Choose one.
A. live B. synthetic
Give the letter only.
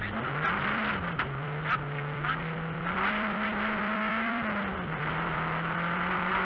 B